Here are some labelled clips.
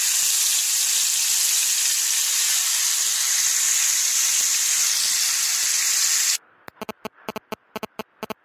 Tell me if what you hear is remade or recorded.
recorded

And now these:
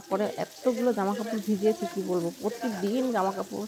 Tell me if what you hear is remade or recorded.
recorded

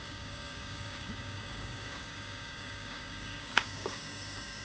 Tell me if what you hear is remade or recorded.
remade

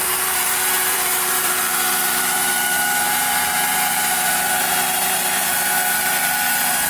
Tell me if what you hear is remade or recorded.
remade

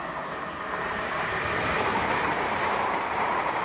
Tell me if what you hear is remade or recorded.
remade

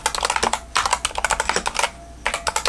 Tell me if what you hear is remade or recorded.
recorded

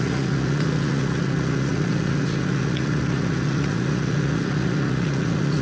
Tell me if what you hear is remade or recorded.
remade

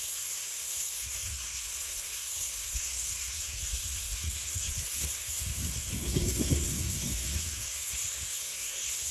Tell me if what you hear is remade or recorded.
remade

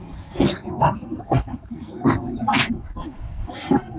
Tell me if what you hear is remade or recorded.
remade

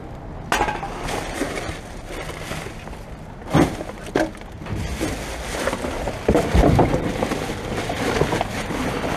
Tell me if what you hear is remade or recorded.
recorded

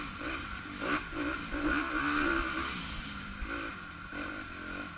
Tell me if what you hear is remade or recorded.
remade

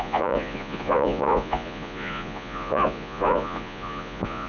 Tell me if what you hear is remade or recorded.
remade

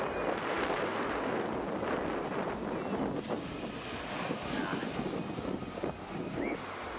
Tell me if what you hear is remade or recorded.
recorded